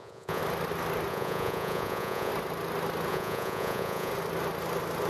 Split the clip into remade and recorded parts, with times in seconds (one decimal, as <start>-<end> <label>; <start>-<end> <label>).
0.0-0.4 remade; 0.4-1.1 recorded; 1.1-2.3 remade; 2.3-3.1 recorded; 3.1-4.1 remade; 4.1-5.1 recorded